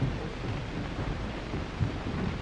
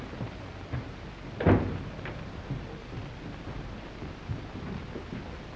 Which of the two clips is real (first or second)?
second